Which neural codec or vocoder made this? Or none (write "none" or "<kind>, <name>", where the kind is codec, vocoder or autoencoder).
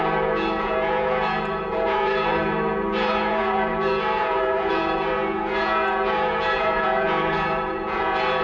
vocoder, Vocos